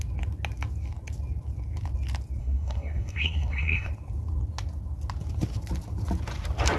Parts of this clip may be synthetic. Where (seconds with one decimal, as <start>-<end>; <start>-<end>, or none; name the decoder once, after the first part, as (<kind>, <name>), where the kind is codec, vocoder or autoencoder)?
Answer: 2.4-3.9 (codec, SNAC)